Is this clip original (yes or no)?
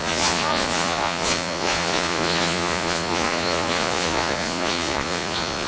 no